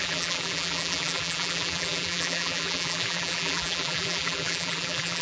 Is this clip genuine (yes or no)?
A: no